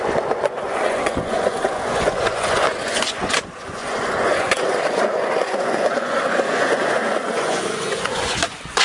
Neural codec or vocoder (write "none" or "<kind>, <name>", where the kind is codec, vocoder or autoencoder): vocoder, Vocos